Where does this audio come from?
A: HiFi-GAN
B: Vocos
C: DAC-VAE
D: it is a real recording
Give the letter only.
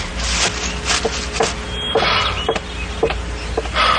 D